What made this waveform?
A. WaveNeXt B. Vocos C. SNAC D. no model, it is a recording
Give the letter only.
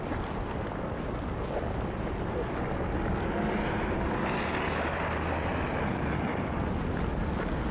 D